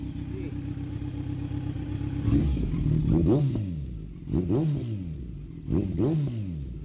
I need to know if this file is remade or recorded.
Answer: recorded